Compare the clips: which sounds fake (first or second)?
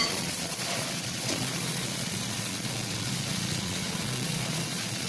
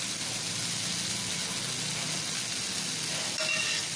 first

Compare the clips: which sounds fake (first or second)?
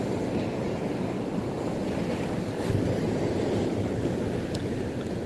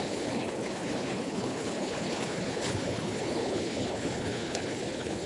second